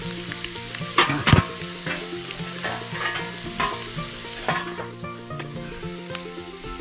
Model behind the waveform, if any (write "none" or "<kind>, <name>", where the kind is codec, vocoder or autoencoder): none